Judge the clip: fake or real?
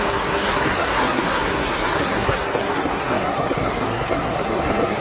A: fake